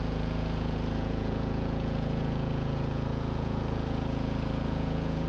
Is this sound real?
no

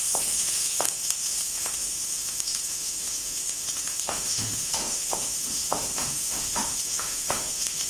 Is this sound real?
no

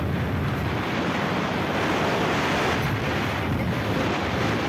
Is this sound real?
yes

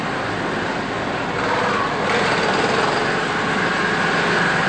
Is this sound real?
yes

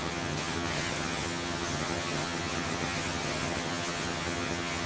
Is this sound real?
no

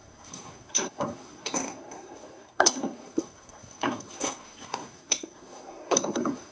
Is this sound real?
no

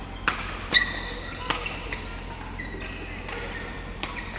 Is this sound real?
yes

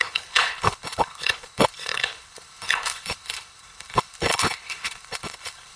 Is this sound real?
no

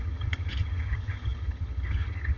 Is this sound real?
no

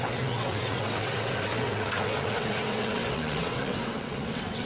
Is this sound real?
no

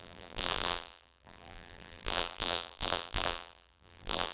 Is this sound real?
no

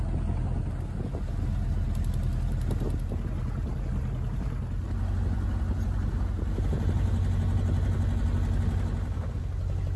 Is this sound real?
yes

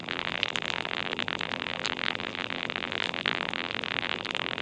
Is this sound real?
no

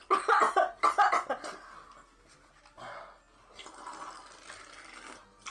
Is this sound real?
yes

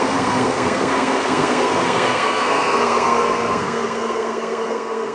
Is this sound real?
no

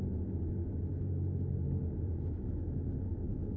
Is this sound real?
yes